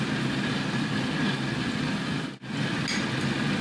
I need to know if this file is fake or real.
real